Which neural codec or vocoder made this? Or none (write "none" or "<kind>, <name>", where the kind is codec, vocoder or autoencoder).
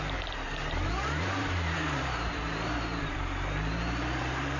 vocoder, BigVGAN v2